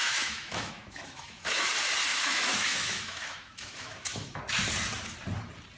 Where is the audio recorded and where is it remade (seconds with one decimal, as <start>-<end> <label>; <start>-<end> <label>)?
0.0-1.7 remade; 1.7-2.1 recorded; 2.1-4.4 remade; 4.4-5.8 recorded